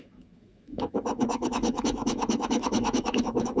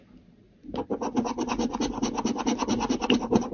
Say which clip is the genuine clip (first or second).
second